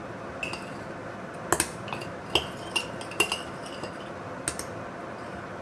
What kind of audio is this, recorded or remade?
recorded